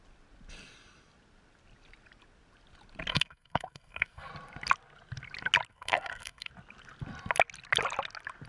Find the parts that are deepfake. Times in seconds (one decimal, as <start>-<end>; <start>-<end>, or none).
3.1-4.3; 5.7-6.5